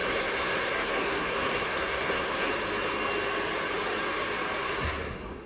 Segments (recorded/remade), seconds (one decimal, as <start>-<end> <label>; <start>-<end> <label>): 0.0-2.5 remade; 2.5-4.6 recorded; 4.6-5.5 remade